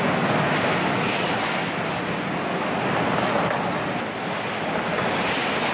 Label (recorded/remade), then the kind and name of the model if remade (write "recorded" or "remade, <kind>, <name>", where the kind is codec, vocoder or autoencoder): recorded